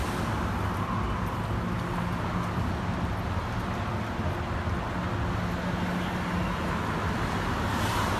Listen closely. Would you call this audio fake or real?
real